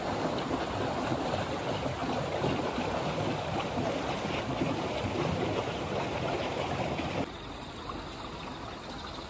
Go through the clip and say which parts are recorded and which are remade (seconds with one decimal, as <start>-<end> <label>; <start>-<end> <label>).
0.0-9.3 recorded